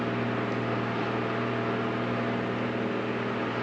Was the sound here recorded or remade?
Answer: recorded